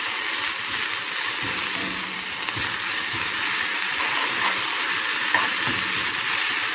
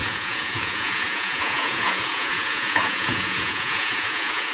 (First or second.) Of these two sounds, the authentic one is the first